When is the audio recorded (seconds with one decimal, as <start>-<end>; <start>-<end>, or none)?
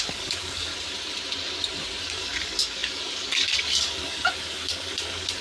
0.7-2.0